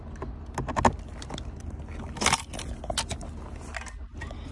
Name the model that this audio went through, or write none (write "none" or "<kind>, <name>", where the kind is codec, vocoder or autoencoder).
none